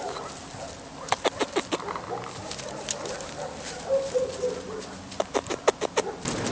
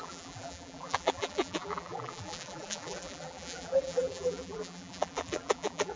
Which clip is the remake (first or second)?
second